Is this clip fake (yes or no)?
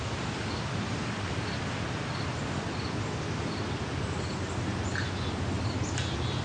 no